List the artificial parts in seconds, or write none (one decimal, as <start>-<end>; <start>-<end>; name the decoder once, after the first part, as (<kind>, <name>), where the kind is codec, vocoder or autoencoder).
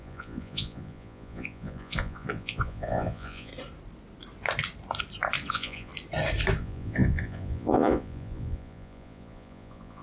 0.0-3.5 (vocoder, Vocos); 5.5-5.9; 6.6-10.0